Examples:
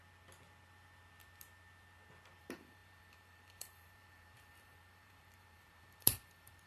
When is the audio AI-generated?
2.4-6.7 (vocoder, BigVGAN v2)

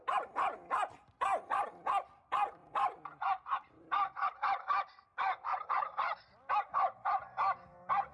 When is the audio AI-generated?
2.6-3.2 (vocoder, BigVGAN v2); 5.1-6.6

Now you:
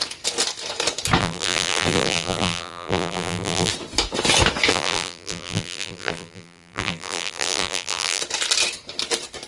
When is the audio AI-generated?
1.2-3.7 (vocoder, BigVGAN v2); 4.7-8.2